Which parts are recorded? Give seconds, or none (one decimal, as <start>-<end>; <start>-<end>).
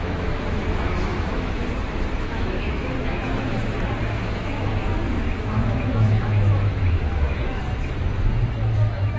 4.8-5.4; 7.6-9.2